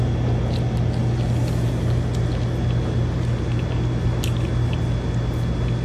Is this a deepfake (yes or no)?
no